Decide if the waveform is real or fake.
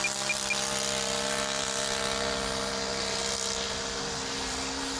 real